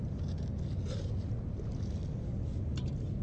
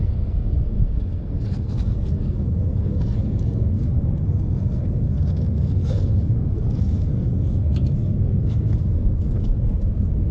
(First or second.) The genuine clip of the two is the first